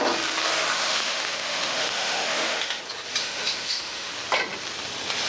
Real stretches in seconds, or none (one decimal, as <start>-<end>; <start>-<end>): 0.0-0.7; 2.8-3.2; 4.1-5.3